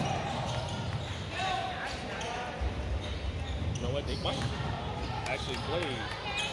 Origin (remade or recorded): recorded